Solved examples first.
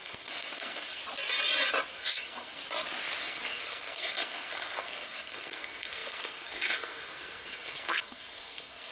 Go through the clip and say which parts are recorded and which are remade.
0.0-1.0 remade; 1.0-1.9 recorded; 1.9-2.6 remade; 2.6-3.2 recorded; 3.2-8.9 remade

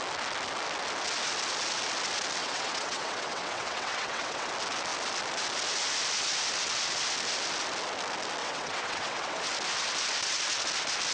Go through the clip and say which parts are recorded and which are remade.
0.0-2.4 recorded; 2.4-4.5 remade; 4.5-8.4 recorded; 8.4-9.5 remade; 9.5-11.1 recorded

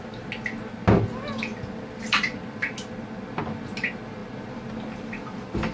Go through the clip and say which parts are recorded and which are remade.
0.0-5.7 recorded

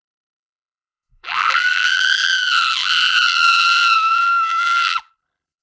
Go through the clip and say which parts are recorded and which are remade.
0.0-5.6 remade

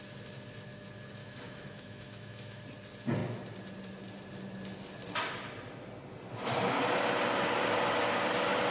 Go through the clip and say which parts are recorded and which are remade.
0.0-1.2 recorded; 1.2-2.6 remade; 2.6-8.7 recorded